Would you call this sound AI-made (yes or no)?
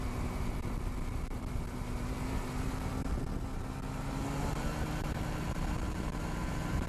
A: yes